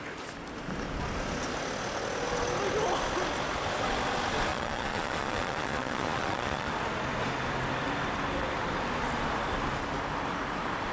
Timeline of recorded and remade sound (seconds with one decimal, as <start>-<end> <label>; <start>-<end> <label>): 0.0-4.5 recorded; 4.5-6.7 remade; 6.7-10.9 recorded